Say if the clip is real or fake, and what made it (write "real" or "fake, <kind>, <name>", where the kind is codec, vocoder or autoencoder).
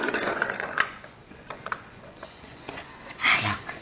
fake, vocoder, Vocos